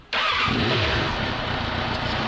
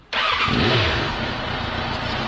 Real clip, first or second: second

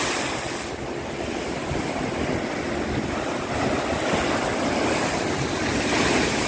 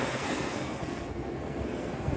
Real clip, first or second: first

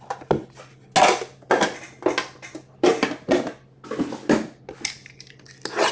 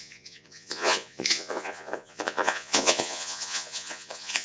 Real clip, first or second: first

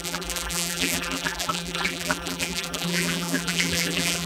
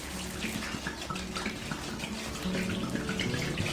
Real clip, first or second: second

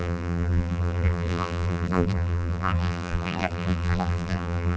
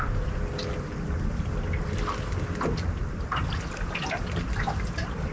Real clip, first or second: second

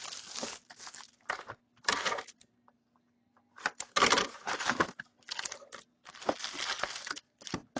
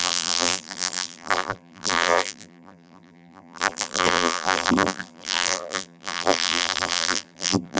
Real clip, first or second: first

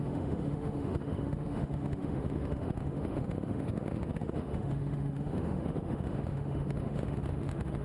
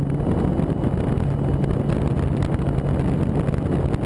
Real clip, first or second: second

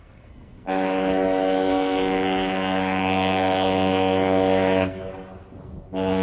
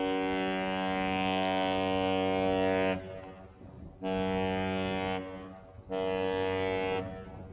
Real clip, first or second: second